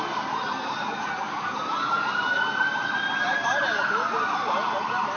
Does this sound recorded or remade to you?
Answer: recorded